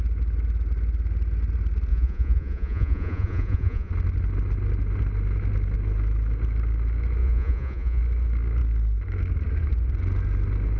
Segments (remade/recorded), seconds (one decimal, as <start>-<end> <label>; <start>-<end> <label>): 0.0-1.9 recorded; 1.9-3.9 remade; 3.9-7.2 recorded; 7.2-8.0 remade; 8.0-10.8 recorded